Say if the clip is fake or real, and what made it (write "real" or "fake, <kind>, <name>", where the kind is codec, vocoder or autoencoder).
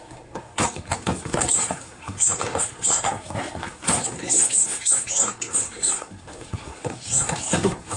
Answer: fake, codec, SNAC